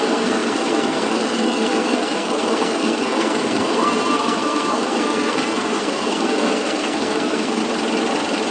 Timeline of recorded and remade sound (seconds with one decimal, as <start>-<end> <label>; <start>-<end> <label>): 0.0-7.6 remade; 7.6-8.5 recorded